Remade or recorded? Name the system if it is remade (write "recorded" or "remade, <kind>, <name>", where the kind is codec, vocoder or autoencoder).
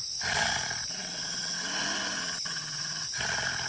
recorded